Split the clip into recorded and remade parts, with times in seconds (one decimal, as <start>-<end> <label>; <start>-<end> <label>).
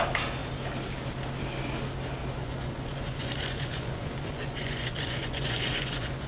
0.0-2.4 recorded; 2.4-6.3 remade